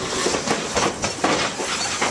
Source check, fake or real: real